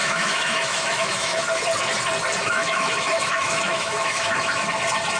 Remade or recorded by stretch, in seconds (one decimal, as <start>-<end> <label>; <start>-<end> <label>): 0.0-1.4 remade; 1.4-2.4 recorded; 2.4-4.6 remade; 4.6-5.2 recorded